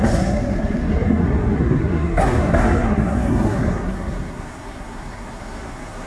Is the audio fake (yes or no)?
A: yes